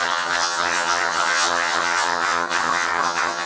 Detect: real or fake fake